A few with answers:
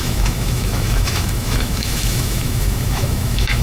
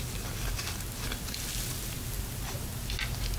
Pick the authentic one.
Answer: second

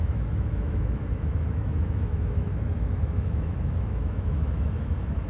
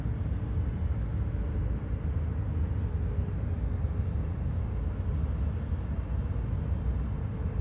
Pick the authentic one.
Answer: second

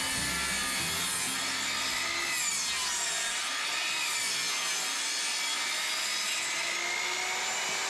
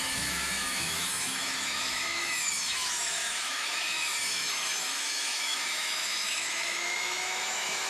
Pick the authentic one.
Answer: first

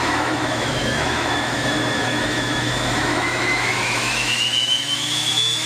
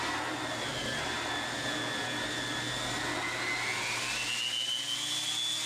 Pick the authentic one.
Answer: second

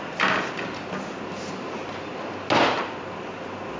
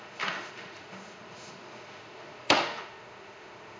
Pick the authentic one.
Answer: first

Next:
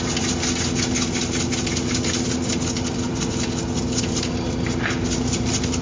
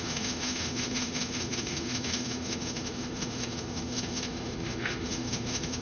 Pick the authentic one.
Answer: first